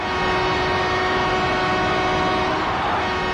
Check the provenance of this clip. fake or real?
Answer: real